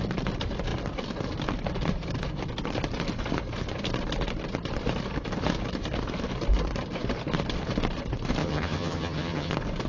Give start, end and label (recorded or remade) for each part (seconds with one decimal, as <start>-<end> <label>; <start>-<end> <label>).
0.0-8.4 recorded; 8.4-9.5 remade; 9.5-9.9 recorded